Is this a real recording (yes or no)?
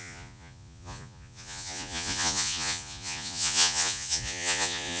no